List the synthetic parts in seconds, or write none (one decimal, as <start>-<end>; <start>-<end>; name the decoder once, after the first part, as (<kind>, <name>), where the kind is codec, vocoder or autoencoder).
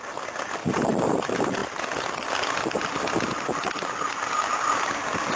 none